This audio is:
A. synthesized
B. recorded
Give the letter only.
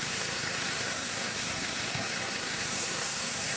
A